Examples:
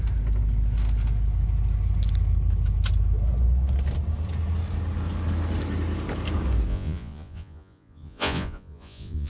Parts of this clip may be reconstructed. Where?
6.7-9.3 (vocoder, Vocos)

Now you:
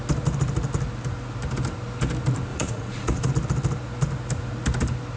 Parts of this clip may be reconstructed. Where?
2.5-3.3 (vocoder, Vocos)

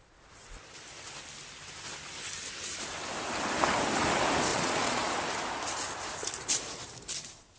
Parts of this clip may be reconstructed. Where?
4.5-5.1 (vocoder, Vocos)

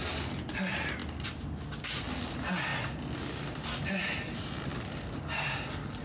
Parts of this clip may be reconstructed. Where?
none

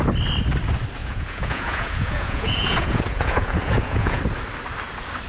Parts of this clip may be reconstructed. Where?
1.0-4.2 (vocoder, Vocos)

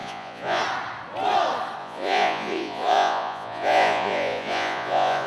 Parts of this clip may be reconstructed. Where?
0.0-0.6 (vocoder, Vocos); 1.8-5.3

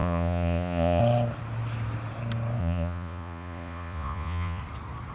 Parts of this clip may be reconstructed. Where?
0.0-1.0 (vocoder, Vocos); 2.6-4.6

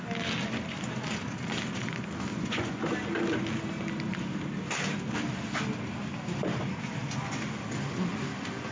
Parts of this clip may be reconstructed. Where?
2.3-2.8 (vocoder, Vocos)